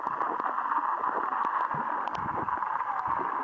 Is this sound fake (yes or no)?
no